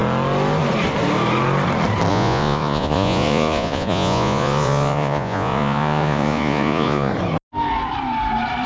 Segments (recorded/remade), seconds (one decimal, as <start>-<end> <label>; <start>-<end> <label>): 0.0-2.1 recorded; 2.1-7.1 remade; 7.1-8.7 recorded